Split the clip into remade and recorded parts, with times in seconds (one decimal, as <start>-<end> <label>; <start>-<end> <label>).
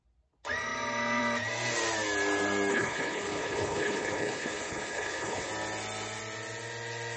0.0-2.7 recorded; 2.7-5.5 remade; 5.5-7.2 recorded